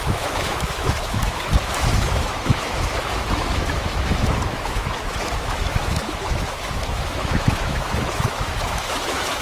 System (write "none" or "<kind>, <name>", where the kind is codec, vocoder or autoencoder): autoencoder, DAC-VAE